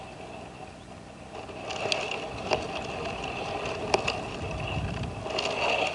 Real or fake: real